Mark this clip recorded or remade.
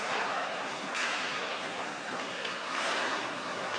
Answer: remade